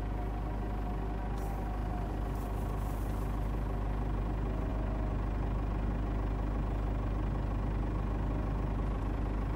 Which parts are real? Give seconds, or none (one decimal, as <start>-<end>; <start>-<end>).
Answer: 0.0-9.6